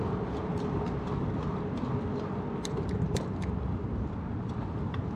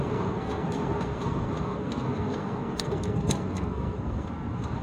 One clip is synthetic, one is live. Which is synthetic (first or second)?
second